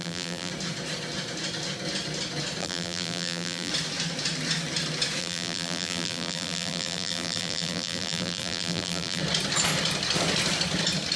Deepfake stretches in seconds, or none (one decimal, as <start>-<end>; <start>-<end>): 0.0-0.5; 2.6-3.7; 5.2-9.2